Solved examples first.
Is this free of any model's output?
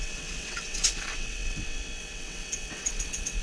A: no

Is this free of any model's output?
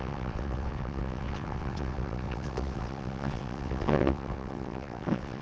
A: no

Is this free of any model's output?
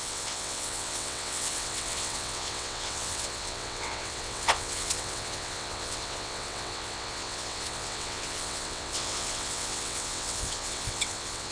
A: no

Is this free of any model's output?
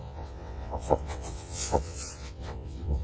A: no